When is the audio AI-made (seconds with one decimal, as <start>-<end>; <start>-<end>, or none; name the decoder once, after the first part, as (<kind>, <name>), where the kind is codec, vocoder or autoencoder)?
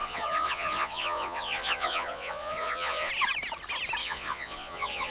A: 0.0-3.1 (vocoder, Vocos); 4.0-5.1